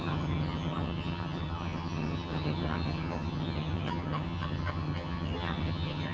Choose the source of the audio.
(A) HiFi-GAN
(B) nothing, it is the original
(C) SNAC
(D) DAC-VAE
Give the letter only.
A